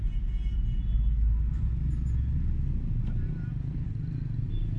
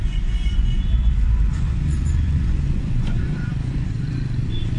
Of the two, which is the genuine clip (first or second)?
first